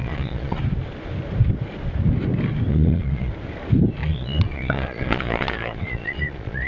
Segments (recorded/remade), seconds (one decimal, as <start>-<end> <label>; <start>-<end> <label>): 0.0-0.6 remade; 0.6-2.7 recorded; 2.7-3.3 remade; 3.3-4.0 recorded; 4.0-6.7 remade